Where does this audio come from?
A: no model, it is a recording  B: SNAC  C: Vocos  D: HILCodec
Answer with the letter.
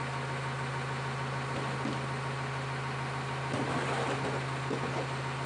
A